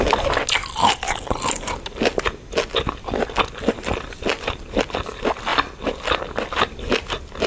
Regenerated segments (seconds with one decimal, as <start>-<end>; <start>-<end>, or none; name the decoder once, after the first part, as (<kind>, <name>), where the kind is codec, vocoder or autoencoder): none